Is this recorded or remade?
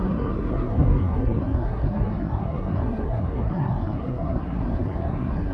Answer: remade